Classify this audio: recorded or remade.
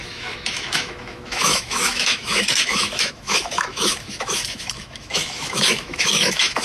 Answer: remade